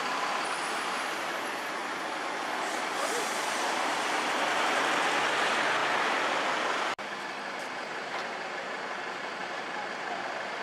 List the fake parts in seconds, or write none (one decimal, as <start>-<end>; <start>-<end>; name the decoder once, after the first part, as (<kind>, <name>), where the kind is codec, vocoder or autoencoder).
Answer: 0.0-1.8 (vocoder, BigVGAN v2); 3.0-10.6